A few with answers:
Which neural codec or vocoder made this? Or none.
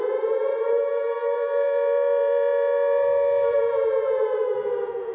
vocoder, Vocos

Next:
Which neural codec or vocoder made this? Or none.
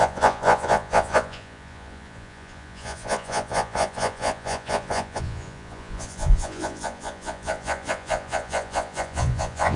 vocoder, Vocos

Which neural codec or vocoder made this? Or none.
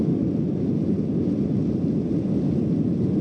none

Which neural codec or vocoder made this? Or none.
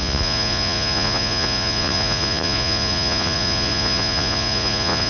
vocoder, Vocos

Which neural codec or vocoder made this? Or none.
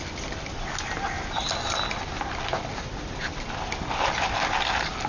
none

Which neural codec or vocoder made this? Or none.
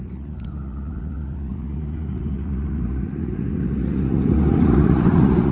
vocoder, Vocos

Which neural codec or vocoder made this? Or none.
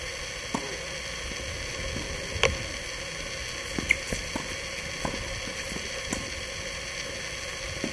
none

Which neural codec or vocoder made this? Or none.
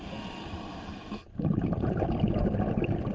none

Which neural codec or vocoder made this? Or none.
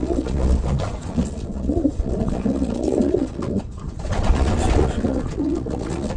vocoder, Vocos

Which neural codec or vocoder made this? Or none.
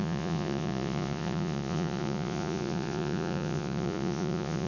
vocoder, Vocos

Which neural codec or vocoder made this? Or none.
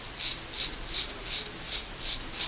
none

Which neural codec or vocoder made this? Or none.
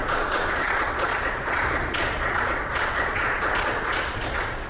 vocoder, Vocos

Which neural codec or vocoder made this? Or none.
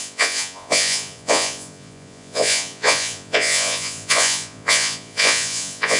vocoder, Vocos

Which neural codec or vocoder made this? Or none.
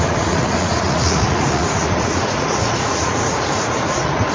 vocoder, Vocos